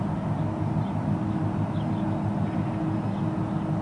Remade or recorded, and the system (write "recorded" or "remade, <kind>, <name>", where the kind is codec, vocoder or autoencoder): recorded